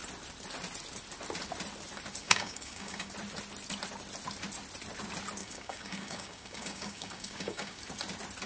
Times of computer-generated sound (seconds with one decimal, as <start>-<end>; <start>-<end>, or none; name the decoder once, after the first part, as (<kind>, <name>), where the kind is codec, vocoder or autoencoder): 2.2-3.1 (codec, DAC); 5.4-7.8